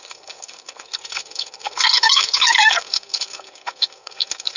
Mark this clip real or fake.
fake